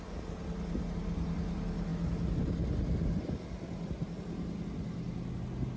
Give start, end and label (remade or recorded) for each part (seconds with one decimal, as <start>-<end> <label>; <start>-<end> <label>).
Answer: 0.0-5.8 recorded